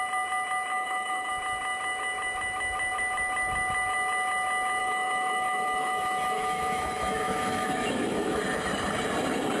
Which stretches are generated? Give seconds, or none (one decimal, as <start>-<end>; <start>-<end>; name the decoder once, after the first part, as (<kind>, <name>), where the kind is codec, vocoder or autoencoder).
0.7-1.3 (autoencoder, DAC-VAE); 4.8-8.4